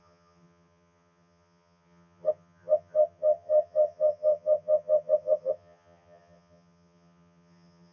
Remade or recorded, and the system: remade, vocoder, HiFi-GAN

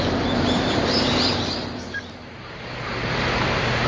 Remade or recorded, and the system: remade, vocoder, BigVGAN v2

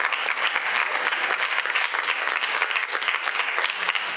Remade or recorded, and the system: remade, codec, DAC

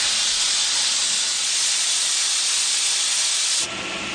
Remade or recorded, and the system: recorded